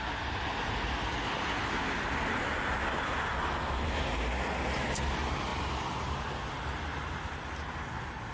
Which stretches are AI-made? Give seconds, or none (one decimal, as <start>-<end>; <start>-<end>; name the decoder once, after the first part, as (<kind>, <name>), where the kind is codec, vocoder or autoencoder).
none